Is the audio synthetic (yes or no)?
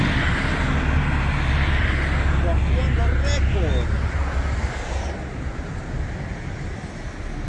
no